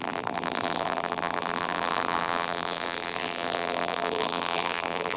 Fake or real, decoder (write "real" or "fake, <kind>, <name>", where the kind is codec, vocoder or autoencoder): fake, vocoder, BigVGAN v2